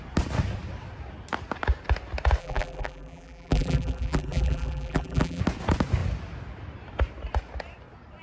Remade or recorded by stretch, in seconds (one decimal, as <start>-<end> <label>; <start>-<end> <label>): 0.0-2.4 recorded; 2.4-5.4 remade; 5.4-8.2 recorded